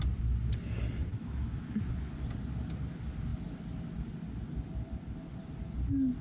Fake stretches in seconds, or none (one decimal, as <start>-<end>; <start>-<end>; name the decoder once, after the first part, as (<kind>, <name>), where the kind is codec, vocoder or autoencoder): 1.1-1.6 (autoencoder, DAC-VAE)